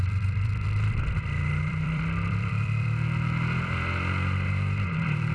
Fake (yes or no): yes